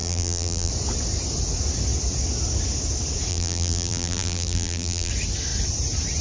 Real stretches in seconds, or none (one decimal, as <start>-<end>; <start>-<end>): 0.7-3.3; 5.1-6.2

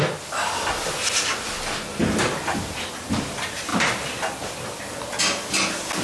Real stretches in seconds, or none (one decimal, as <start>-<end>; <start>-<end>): 0.0-6.0

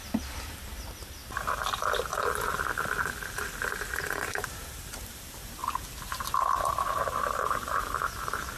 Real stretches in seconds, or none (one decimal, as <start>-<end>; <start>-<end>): 1.2-3.9; 5.6-6.7

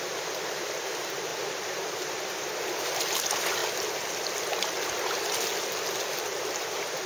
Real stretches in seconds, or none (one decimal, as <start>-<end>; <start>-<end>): 3.6-6.2

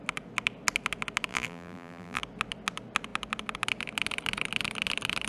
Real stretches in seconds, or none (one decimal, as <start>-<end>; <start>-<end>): 0.0-1.3; 2.2-5.3